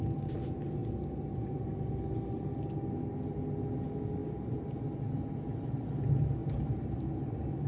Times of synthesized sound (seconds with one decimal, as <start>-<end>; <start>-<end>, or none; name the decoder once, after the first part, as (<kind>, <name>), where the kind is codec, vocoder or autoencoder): 4.2-4.8 (vocoder, BigVGAN v2); 6.4-7.7